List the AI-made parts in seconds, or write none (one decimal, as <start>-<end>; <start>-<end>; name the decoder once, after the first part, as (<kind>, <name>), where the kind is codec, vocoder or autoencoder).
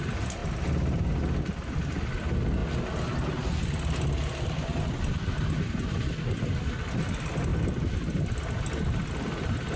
none